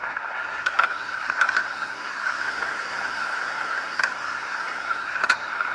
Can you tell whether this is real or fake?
fake